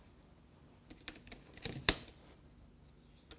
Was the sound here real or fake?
real